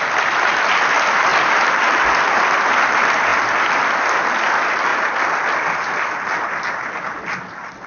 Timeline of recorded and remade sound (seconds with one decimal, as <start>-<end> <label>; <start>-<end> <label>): 0.0-7.9 recorded